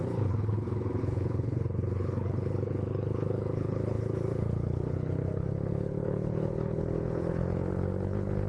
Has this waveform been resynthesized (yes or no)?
yes